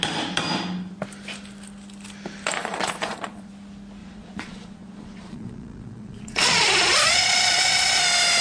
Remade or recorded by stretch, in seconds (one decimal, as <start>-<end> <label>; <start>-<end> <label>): 0.0-2.6 recorded; 2.6-3.5 remade; 3.5-4.0 recorded; 4.0-8.0 remade; 8.0-8.4 recorded